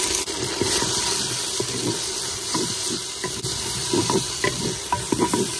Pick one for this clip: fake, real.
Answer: real